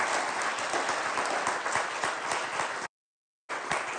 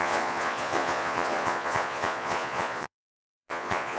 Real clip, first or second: first